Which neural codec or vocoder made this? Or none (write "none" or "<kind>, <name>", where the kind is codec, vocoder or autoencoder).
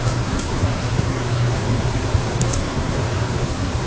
codec, SNAC